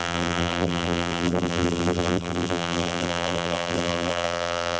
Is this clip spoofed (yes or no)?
yes